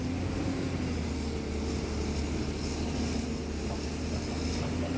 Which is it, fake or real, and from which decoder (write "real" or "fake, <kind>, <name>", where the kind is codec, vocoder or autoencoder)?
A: real